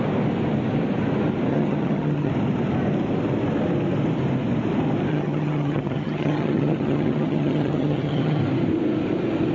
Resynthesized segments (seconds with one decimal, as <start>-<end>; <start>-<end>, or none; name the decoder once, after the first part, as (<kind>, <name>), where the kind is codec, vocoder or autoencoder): 1.5-2.3 (vocoder, HiFi-GAN); 5.1-8.4